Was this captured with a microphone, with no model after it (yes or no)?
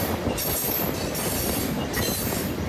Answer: yes